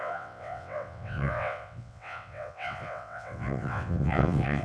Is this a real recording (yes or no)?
no